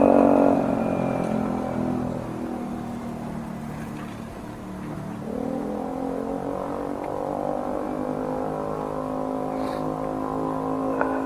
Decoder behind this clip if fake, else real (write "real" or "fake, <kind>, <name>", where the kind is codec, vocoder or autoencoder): real